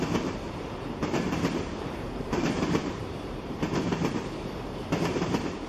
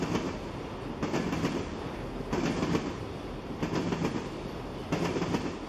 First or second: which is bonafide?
second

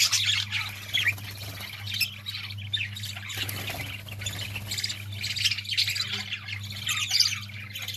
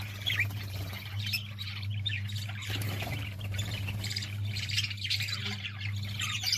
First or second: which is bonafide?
first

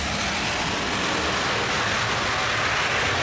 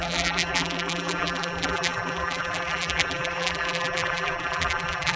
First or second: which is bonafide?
first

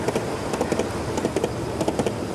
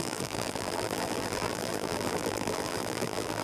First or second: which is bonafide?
first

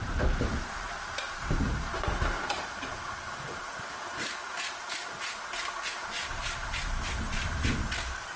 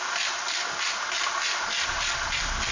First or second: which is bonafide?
second